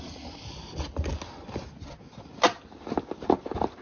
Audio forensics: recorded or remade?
recorded